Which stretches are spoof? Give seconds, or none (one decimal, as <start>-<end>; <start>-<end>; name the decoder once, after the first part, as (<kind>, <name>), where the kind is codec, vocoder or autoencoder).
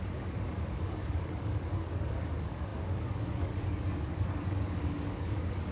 0.0-5.7 (codec, DAC)